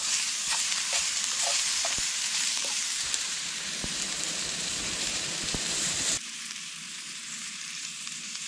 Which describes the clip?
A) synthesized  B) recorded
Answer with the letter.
A